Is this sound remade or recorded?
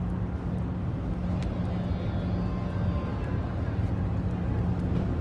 recorded